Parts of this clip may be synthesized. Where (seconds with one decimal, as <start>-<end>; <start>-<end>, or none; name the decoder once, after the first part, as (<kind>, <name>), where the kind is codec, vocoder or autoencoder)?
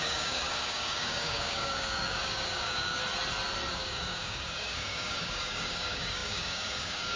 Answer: 0.0-3.0 (codec, DAC); 3.7-7.2